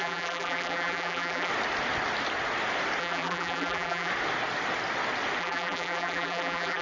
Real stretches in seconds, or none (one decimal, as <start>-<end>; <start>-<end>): 1.5-3.0; 4.1-5.4